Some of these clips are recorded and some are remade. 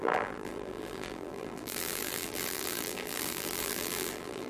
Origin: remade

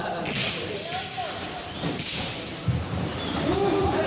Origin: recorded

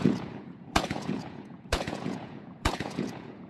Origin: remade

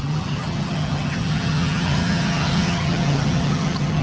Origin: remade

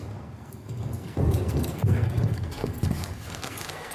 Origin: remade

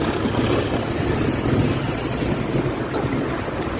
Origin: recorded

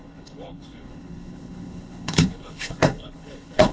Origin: remade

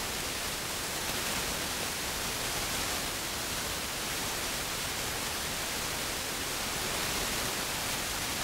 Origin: recorded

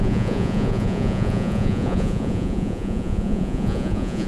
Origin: remade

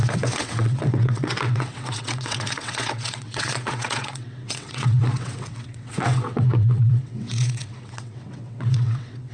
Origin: remade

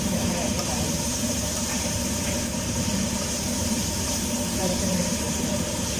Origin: remade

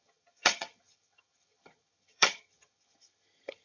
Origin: remade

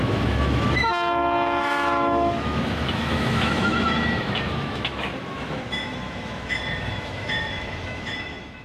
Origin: remade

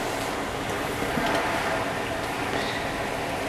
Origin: recorded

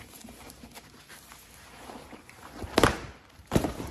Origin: remade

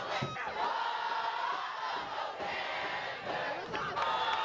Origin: recorded